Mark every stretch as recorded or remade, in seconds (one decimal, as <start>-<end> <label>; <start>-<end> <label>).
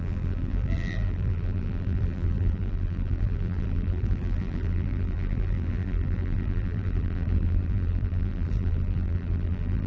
0.0-9.9 remade